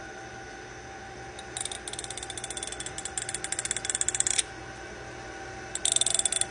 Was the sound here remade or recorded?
recorded